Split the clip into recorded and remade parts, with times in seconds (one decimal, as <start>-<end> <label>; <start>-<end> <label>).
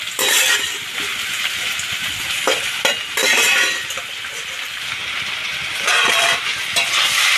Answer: 0.0-1.1 recorded; 1.1-2.1 remade; 2.1-5.0 recorded; 5.0-6.8 remade; 6.8-7.4 recorded